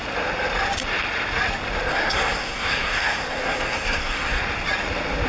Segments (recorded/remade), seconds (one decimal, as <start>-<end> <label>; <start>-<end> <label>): 0.0-1.9 recorded; 1.9-4.4 remade; 4.4-5.3 recorded